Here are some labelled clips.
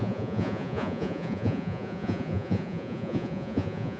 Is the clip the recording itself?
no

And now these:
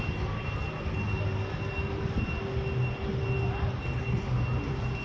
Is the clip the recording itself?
yes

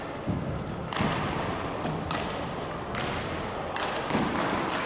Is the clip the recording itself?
yes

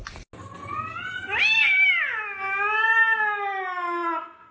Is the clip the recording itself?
yes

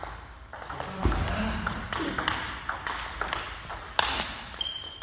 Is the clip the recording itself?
yes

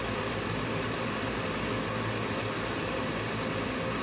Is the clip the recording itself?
yes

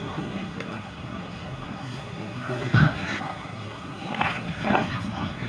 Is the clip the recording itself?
no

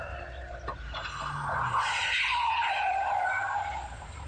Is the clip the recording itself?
yes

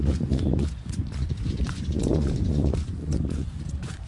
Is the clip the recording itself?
no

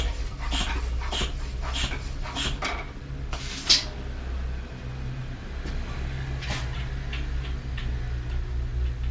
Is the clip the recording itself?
yes